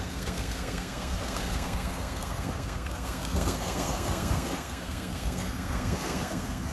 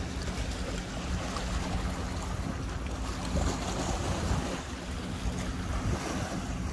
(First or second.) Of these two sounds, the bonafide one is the second